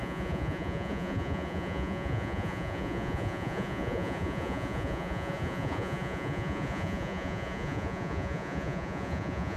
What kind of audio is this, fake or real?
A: fake